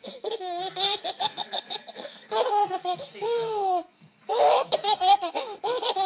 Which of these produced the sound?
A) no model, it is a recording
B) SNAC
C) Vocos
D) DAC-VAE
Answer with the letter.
B